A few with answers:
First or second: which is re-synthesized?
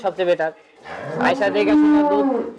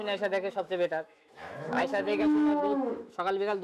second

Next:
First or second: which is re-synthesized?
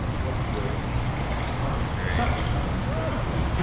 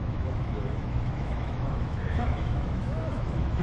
second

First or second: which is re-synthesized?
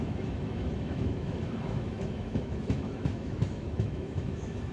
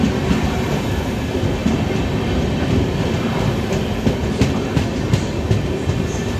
first